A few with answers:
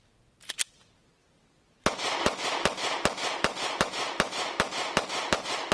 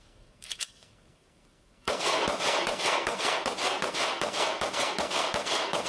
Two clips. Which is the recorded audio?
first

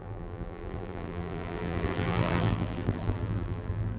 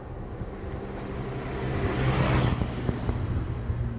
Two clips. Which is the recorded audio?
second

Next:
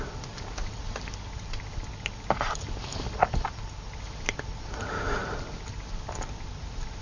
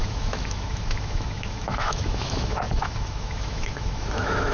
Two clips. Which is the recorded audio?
first